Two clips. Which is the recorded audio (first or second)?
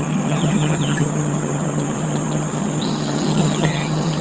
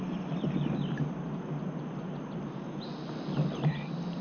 second